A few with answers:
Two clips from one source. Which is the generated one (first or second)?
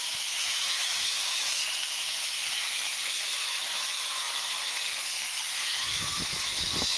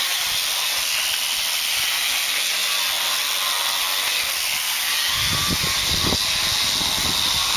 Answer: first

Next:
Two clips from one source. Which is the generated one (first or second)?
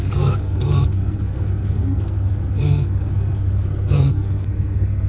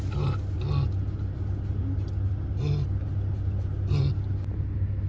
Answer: first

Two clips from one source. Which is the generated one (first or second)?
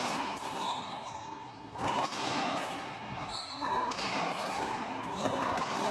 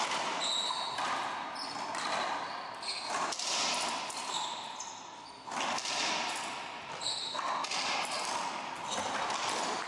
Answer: first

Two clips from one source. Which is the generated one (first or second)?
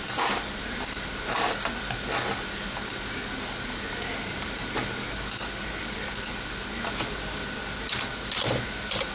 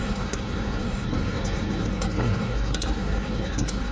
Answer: second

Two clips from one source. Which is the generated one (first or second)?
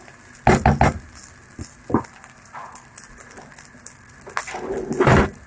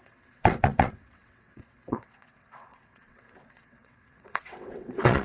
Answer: second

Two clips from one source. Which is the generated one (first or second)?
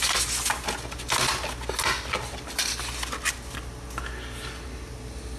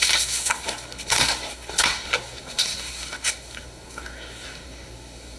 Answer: second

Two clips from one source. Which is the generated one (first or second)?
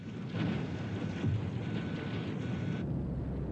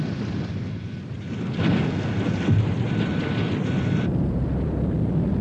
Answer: second